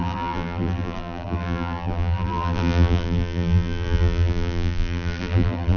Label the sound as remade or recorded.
remade